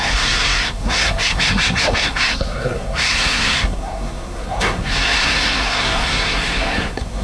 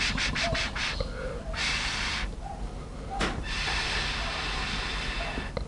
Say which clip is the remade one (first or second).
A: first